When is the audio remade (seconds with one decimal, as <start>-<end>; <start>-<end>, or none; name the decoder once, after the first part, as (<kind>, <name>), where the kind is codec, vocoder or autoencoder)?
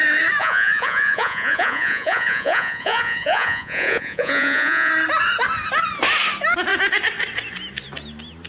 0.4-4.9 (vocoder, Vocos)